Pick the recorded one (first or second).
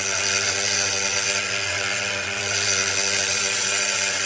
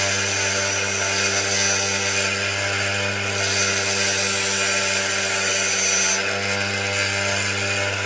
second